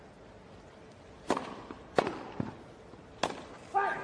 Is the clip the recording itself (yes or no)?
yes